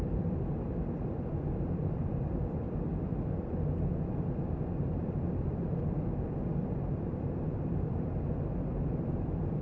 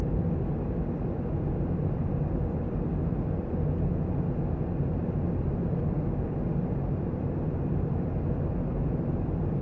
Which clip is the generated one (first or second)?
first